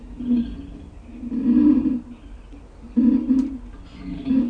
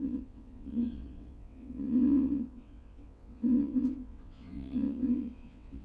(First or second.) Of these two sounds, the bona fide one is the first